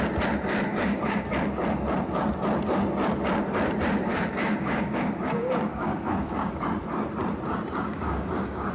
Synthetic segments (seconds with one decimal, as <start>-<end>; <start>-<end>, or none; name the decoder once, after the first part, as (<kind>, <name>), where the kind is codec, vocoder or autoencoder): 0.7-1.3 (codec, DAC); 4.1-6.6; 7.8-8.7